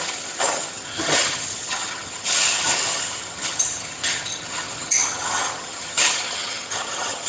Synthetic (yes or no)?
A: yes